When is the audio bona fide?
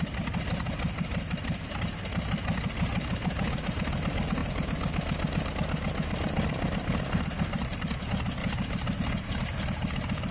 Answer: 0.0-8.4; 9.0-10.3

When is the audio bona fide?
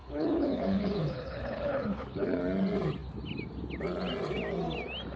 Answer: 2.4-5.2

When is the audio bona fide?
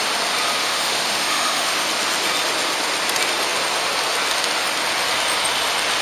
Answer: 0.0-0.6; 1.9-6.0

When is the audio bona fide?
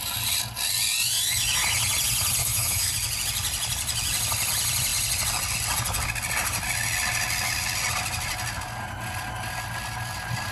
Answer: 0.0-2.4; 2.9-10.5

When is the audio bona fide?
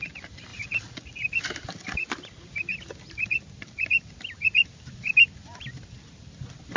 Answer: 0.0-0.5; 1.7-6.8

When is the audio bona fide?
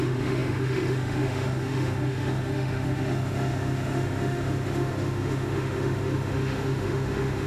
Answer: none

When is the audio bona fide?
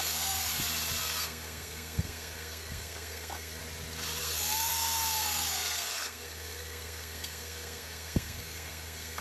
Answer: 0.5-1.0; 3.6-4.2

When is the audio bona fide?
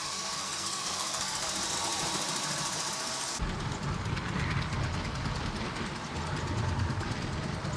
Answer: 1.5-7.8